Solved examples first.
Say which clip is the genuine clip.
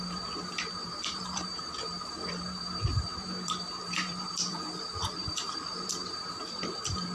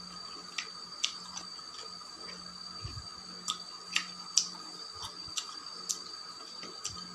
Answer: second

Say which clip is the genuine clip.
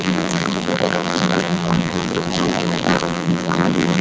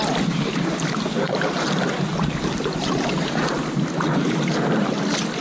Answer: second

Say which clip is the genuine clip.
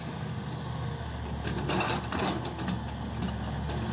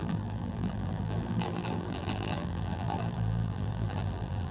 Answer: first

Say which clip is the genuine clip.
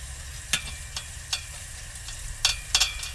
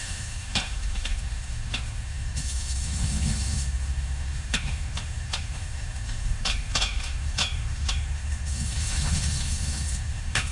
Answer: first